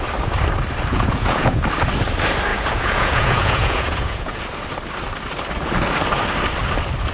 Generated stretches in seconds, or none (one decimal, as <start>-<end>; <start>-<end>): 0.9-1.6; 2.5-4.4